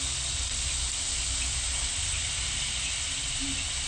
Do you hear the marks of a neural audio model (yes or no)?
no